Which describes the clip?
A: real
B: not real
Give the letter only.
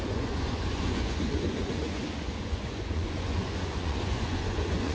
B